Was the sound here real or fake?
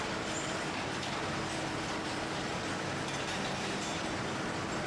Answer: real